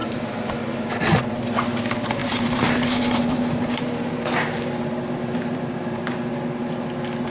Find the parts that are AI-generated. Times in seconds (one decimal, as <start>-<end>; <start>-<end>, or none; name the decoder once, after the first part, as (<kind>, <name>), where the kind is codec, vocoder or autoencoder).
0.0-0.5 (vocoder, BigVGAN v2); 2.2-6.0